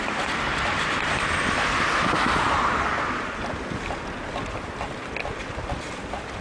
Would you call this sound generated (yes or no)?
no